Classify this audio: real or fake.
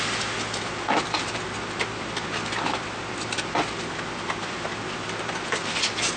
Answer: real